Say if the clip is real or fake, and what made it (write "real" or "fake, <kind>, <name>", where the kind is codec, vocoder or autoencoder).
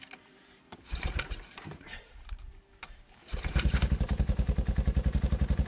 fake, vocoder, BigVGAN v2